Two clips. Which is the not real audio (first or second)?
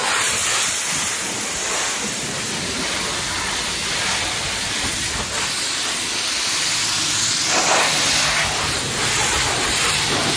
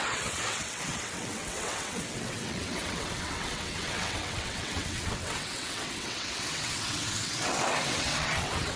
second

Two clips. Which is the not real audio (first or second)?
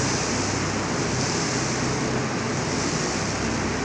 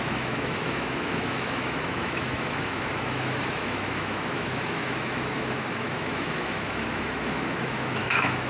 second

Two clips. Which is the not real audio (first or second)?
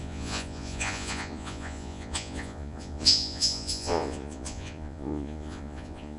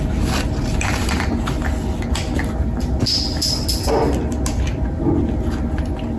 first